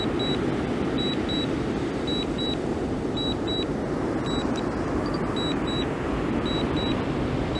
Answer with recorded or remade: recorded